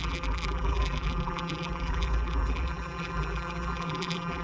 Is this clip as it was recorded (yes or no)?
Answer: no